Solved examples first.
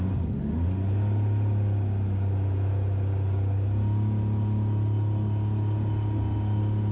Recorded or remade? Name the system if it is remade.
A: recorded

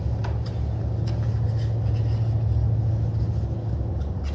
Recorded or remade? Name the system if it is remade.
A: recorded